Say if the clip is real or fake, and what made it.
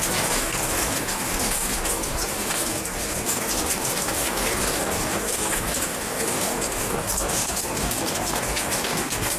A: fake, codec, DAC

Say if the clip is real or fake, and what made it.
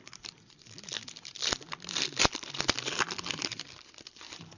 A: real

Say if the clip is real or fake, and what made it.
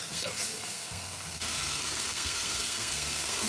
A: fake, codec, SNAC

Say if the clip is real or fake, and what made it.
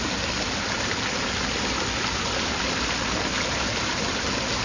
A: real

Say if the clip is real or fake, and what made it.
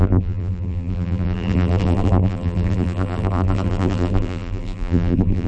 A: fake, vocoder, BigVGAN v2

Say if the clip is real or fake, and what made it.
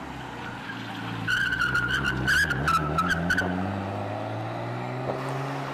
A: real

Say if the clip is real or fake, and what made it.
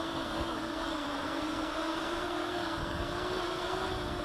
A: fake, codec, SNAC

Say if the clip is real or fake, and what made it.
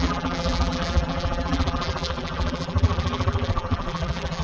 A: fake, vocoder, BigVGAN v2